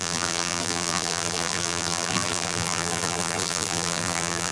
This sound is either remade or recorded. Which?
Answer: remade